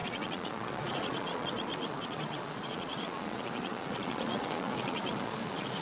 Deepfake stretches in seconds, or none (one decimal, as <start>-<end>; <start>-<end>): 0.0-5.8